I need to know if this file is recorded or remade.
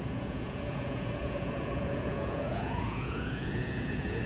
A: remade